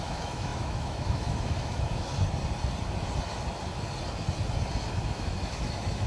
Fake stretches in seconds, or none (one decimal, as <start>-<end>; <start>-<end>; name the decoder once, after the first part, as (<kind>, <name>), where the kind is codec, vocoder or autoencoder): 0.0-2.1 (autoencoder, DAC-VAE); 4.9-6.1